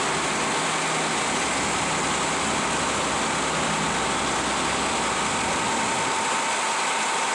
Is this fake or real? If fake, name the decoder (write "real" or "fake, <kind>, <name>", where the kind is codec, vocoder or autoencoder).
real